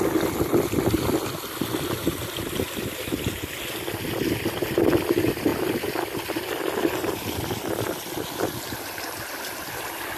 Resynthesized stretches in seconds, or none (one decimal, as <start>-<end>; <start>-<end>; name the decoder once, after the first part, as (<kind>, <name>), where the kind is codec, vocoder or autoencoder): none